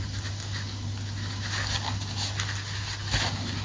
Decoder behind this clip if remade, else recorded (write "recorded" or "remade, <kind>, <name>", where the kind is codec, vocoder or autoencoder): recorded